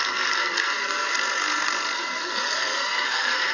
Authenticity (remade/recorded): remade